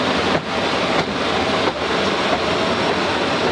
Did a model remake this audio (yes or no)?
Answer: no